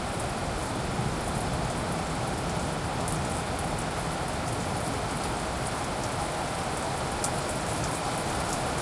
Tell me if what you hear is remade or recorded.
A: recorded